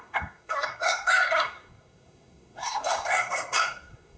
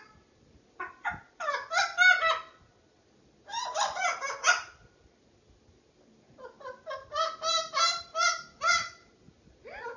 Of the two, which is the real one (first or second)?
second